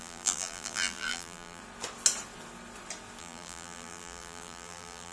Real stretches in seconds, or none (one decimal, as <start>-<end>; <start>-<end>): 1.6-3.2